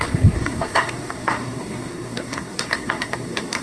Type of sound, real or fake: fake